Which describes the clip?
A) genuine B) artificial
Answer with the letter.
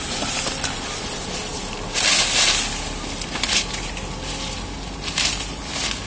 A